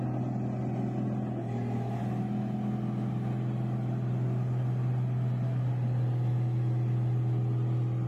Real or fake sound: real